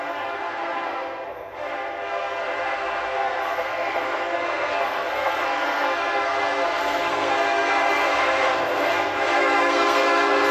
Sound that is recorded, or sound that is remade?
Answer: remade